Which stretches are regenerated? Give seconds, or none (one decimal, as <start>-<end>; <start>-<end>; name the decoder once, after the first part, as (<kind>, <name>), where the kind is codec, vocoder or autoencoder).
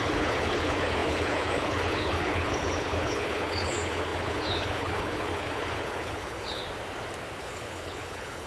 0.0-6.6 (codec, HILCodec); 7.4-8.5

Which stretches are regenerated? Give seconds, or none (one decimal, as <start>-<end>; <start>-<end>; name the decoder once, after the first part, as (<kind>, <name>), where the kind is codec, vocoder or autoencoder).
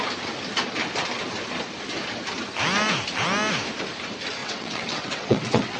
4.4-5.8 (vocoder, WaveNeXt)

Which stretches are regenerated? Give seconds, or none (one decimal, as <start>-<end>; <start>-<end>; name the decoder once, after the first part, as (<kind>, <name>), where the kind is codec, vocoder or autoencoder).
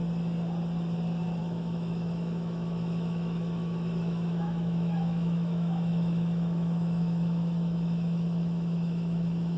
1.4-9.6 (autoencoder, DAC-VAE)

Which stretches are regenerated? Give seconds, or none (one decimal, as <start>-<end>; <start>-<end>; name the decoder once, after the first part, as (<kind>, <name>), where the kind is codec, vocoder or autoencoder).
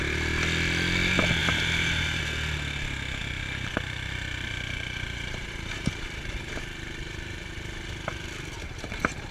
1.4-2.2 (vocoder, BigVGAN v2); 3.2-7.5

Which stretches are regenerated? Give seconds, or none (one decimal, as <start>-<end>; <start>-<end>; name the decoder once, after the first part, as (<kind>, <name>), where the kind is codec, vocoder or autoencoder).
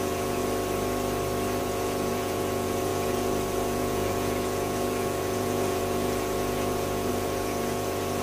0.0-0.4 (vocoder, Vocos); 1.6-8.2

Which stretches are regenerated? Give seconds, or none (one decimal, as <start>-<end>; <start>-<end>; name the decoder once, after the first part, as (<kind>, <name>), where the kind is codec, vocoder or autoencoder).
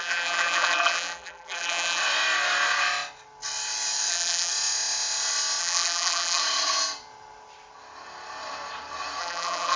0.0-2.0 (vocoder, BigVGAN v2); 4.1-4.5; 5.6-6.4; 9.2-9.8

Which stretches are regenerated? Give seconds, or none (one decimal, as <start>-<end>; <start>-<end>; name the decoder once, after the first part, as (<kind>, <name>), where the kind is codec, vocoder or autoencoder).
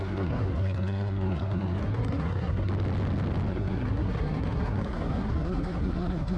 0.0-2.7 (codec, SNAC); 3.5-6.4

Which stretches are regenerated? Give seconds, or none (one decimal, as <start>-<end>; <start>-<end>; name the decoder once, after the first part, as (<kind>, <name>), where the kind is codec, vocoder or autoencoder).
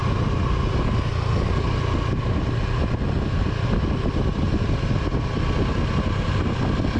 none